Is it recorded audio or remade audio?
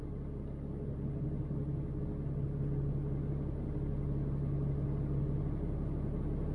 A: recorded